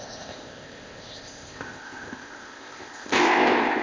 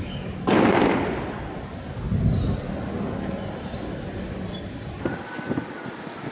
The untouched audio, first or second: second